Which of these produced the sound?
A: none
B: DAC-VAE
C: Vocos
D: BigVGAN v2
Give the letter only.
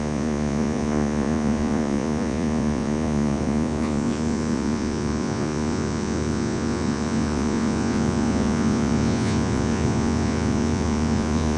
C